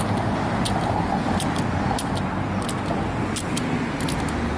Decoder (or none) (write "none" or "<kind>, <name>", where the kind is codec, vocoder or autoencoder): none